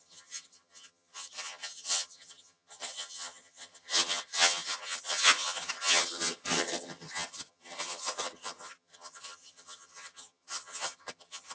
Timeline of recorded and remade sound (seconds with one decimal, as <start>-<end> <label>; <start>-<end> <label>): 0.0-11.5 remade